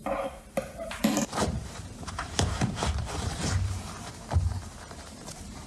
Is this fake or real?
fake